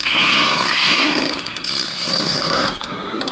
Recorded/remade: remade